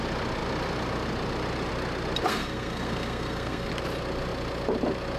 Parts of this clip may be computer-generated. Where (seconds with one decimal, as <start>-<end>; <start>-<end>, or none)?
2.3-3.7